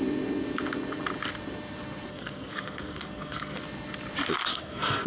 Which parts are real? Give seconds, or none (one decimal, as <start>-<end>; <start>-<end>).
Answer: 0.0-2.1; 3.6-4.5